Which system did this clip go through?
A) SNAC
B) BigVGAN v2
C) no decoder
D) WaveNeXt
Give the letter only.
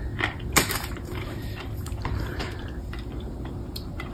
B